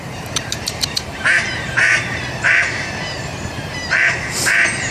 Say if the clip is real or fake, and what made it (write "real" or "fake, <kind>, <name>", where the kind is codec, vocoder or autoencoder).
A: fake, vocoder, BigVGAN v2